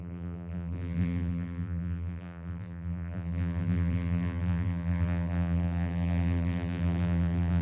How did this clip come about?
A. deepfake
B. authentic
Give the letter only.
A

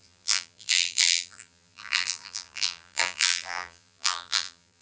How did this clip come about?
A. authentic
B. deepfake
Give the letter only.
B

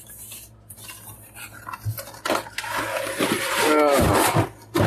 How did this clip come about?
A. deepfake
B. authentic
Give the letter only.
B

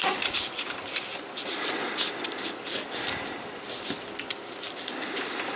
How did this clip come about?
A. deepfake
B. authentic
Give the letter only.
B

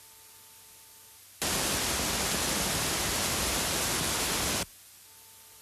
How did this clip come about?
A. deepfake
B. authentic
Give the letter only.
B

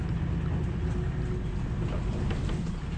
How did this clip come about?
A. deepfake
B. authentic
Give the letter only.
B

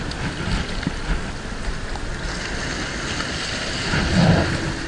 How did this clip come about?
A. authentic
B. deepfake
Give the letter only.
A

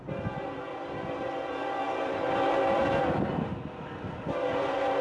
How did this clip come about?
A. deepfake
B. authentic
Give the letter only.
A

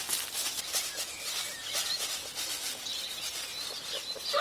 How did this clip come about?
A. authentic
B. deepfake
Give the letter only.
A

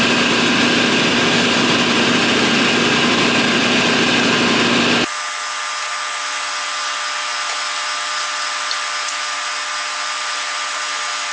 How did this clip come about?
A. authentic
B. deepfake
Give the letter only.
A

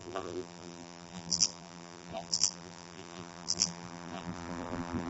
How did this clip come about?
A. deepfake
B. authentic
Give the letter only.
A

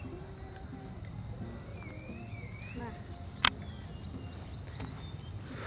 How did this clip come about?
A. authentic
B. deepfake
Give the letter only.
A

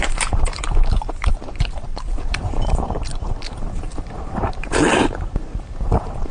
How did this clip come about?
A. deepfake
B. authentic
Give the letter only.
A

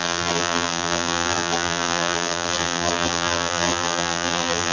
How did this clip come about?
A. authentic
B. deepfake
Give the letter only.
B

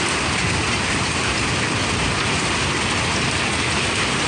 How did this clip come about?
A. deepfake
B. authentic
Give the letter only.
B